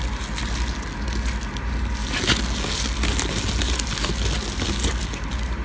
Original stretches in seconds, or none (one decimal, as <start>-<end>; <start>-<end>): 0.0-5.6